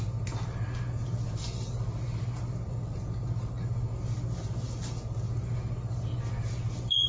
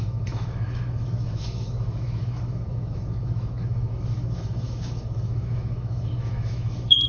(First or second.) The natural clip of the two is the first